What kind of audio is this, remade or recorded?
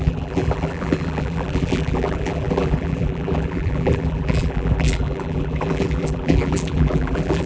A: remade